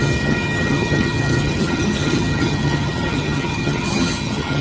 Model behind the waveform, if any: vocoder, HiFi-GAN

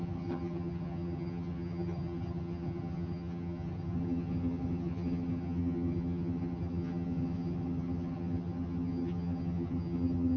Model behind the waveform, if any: vocoder, HiFi-GAN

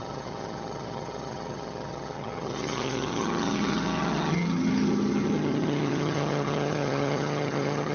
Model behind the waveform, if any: vocoder, HiFi-GAN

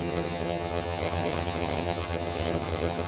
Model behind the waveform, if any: vocoder, HiFi-GAN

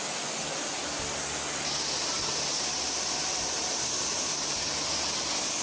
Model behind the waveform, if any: none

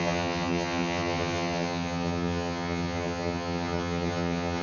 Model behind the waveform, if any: vocoder, HiFi-GAN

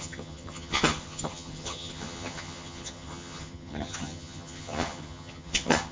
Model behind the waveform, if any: vocoder, HiFi-GAN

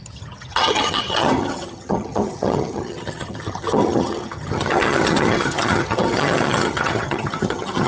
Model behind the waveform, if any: vocoder, HiFi-GAN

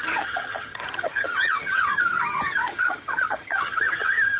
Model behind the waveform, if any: vocoder, HiFi-GAN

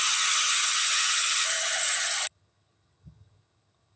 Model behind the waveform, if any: vocoder, HiFi-GAN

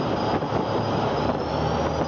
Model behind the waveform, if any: none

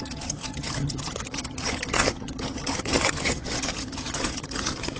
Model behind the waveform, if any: vocoder, HiFi-GAN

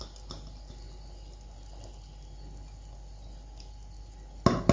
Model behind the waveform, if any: none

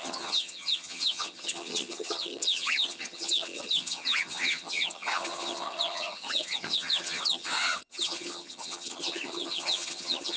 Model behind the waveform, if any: vocoder, HiFi-GAN